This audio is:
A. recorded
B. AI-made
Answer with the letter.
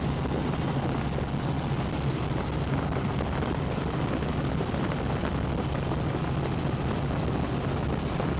A